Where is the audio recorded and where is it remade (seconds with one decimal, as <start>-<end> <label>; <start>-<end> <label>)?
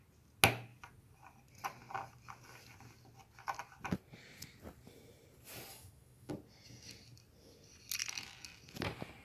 0.0-5.7 recorded; 5.7-6.3 remade; 6.3-9.2 recorded